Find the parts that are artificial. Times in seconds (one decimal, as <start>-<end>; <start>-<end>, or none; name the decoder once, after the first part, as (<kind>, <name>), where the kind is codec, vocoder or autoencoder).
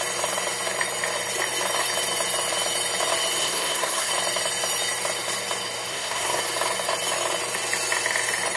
3.4-4.1 (codec, SNAC); 5.9-6.4